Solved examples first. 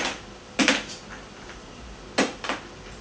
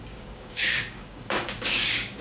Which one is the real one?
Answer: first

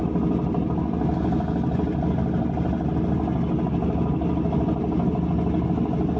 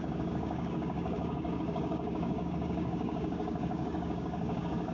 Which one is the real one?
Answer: first